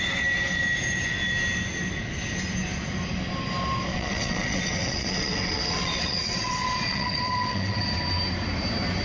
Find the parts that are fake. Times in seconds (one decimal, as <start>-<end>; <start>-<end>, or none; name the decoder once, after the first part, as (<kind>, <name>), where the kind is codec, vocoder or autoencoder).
3.9-7.8 (vocoder, WaveNeXt)